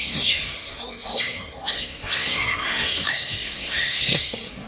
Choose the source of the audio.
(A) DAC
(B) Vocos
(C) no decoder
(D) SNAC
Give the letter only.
D